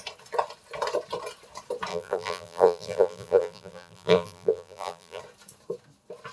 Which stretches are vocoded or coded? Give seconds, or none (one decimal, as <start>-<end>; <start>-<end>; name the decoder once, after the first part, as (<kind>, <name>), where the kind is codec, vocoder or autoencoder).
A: 1.9-5.2 (vocoder, BigVGAN v2)